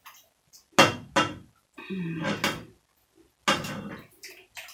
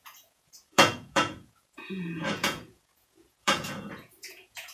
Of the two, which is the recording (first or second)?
first